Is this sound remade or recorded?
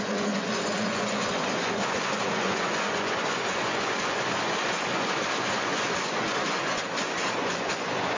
remade